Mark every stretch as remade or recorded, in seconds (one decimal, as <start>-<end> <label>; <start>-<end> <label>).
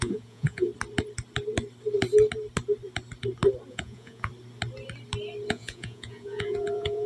0.0-0.7 remade; 0.7-3.7 recorded; 3.7-4.3 remade; 4.3-5.5 recorded; 5.5-7.1 remade